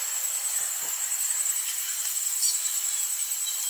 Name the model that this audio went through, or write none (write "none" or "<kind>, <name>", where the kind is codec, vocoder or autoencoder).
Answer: vocoder, BigVGAN v2